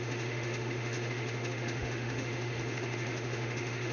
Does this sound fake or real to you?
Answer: fake